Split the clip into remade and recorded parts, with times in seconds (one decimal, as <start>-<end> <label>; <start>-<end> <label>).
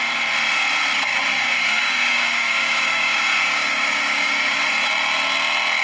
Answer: 0.0-1.1 recorded; 1.1-4.6 remade; 4.6-5.8 recorded